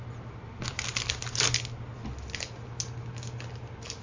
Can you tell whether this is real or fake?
real